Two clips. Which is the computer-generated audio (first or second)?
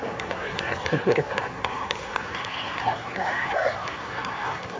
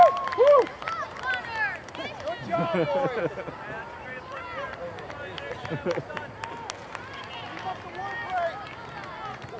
first